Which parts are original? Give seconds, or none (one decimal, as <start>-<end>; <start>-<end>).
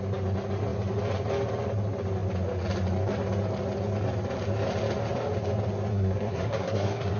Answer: 0.0-5.9